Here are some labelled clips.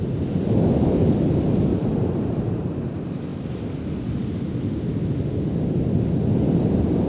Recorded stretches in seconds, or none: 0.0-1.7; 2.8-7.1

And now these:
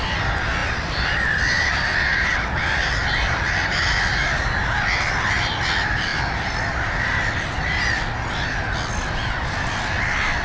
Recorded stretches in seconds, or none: 0.0-0.6; 2.3-3.0; 5.4-6.1; 8.3-10.4

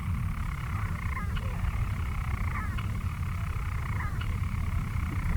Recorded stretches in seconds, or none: 0.0-1.8; 3.1-3.8

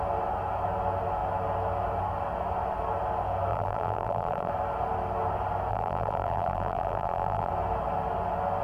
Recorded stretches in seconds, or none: 0.0-3.5; 4.5-5.7; 7.5-8.6

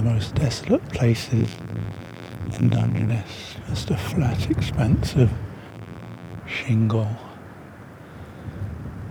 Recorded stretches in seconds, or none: 0.0-1.4; 3.1-5.7; 6.4-9.1